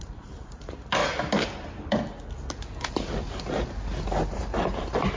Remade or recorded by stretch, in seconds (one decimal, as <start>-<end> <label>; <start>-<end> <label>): 0.0-1.0 remade; 1.0-4.0 recorded; 4.0-5.2 remade